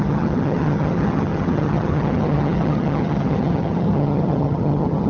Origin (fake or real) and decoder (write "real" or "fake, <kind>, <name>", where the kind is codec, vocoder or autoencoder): fake, vocoder, HiFi-GAN